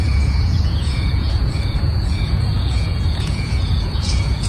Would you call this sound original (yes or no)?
no